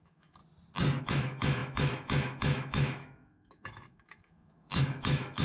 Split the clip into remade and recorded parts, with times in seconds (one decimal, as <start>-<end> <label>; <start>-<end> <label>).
0.0-0.4 remade; 0.4-1.0 recorded; 1.0-5.4 remade